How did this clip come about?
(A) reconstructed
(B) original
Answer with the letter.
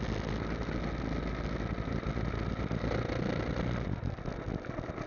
B